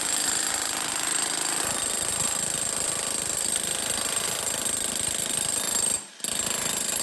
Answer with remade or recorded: recorded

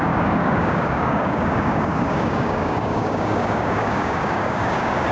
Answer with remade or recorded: remade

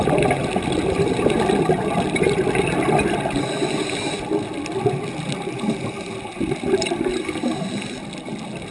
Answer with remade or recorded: recorded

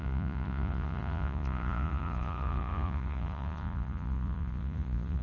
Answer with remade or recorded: remade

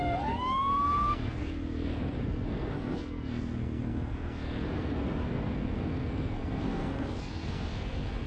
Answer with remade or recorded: remade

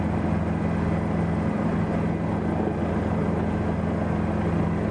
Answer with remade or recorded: recorded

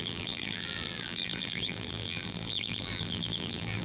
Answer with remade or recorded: remade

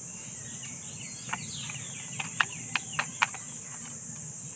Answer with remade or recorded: recorded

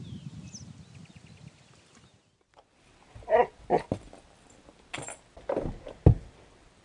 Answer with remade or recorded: recorded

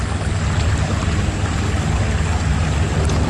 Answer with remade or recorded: recorded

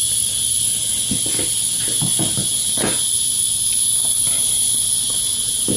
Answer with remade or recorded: recorded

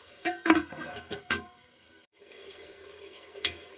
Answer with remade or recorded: remade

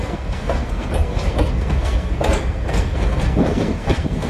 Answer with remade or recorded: remade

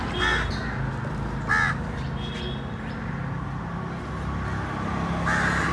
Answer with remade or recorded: recorded